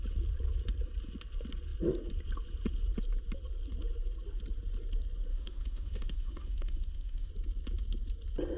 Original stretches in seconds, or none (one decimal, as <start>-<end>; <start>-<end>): 0.0-5.3; 7.3-8.6